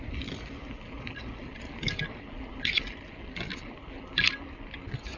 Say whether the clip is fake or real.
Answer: real